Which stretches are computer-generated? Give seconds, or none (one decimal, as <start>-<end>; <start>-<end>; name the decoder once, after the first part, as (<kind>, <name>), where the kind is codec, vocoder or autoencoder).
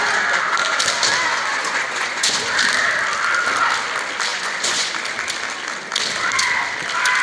1.5-2.5 (vocoder, Vocos); 4.3-4.9